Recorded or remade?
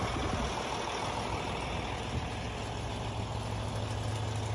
recorded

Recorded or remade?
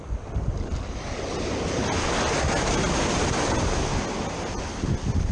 recorded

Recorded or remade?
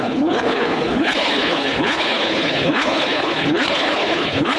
remade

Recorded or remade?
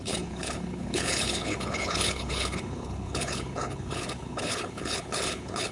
remade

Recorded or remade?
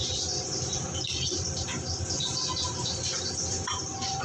recorded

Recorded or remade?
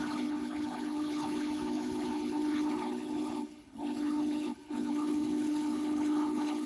remade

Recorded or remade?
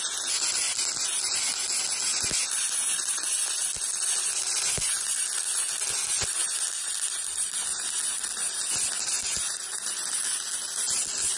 recorded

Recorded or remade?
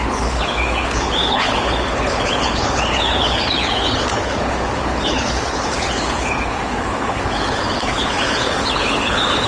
remade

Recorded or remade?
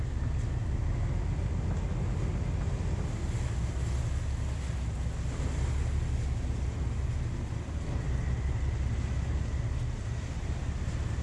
recorded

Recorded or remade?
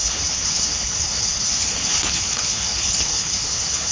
remade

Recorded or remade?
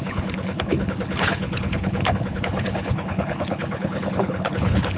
remade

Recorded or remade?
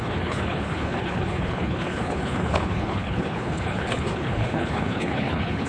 remade